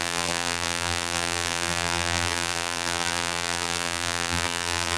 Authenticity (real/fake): fake